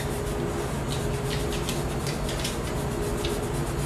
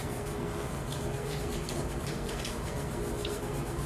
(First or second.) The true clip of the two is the first